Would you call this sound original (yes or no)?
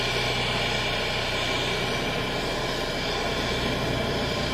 yes